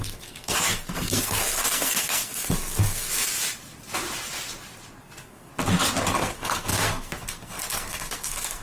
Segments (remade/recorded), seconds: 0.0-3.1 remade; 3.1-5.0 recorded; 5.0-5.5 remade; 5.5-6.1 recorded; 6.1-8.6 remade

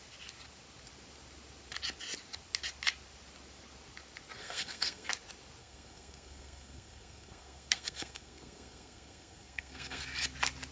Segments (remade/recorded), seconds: 0.0-4.4 recorded; 4.4-5.1 remade; 5.1-5.6 recorded; 5.6-10.0 remade; 10.0-10.7 recorded

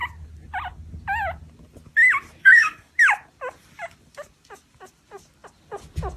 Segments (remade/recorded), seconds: 0.0-2.4 recorded; 2.4-2.9 remade; 2.9-6.2 recorded